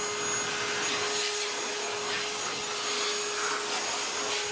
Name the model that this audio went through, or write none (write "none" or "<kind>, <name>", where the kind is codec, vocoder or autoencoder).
none